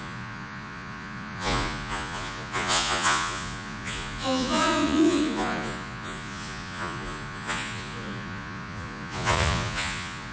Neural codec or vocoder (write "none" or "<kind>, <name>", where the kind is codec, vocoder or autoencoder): vocoder, Vocos